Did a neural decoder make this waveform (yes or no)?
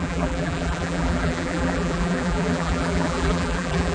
yes